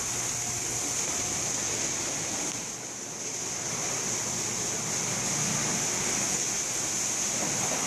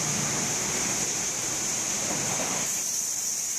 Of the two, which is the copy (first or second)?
second